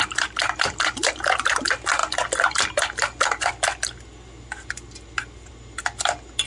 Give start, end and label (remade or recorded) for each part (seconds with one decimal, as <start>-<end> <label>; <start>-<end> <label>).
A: 0.0-6.5 recorded